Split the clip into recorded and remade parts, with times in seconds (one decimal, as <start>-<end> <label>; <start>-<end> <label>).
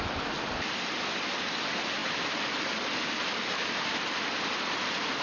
0.0-5.2 recorded